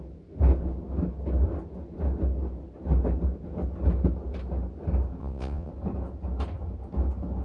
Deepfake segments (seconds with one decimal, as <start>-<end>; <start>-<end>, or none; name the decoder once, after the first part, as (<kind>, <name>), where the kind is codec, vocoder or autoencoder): 5.2-5.7 (vocoder, WaveNeXt)